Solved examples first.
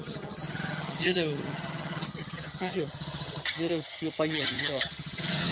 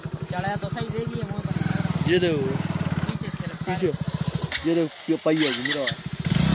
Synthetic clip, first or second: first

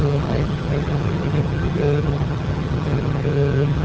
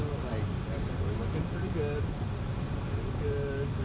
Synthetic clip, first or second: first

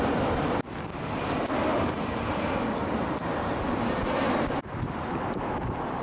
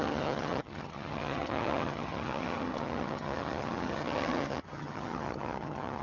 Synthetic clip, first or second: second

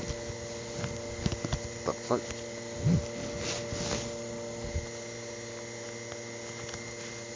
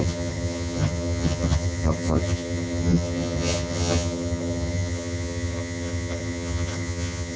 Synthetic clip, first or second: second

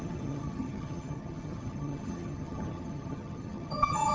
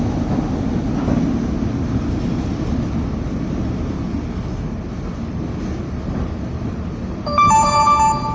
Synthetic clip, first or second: first